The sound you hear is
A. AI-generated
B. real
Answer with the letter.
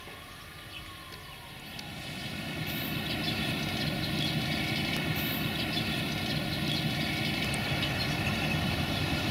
B